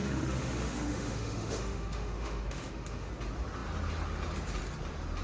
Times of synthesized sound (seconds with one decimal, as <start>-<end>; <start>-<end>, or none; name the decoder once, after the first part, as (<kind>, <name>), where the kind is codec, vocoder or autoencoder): 0.0-3.1 (autoencoder, DAC-VAE)